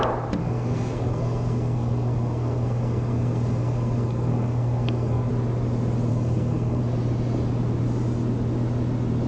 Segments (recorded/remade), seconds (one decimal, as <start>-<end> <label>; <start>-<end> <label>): 0.0-0.4 recorded; 0.4-5.3 remade; 5.3-6.1 recorded; 6.1-6.8 remade; 6.8-9.3 recorded